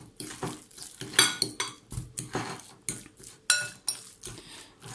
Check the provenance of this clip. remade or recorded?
recorded